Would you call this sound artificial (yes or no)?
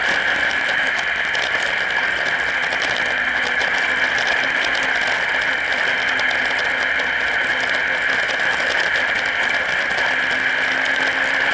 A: no